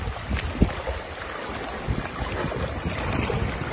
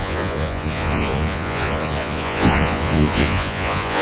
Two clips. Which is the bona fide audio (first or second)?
first